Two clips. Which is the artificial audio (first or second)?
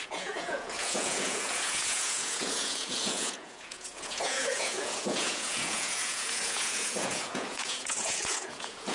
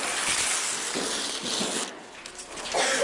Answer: first